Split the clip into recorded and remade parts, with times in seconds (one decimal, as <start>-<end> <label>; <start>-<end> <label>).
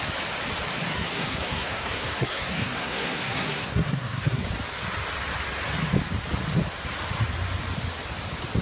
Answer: 0.0-0.9 recorded; 0.9-4.5 remade; 4.5-8.6 recorded